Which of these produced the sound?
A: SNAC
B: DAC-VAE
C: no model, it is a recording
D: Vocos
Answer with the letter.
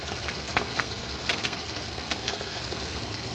A